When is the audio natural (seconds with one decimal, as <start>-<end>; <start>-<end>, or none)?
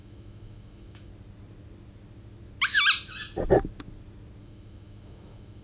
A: 1.1-4.4